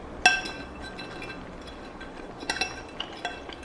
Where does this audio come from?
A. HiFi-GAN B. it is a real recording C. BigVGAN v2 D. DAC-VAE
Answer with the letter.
B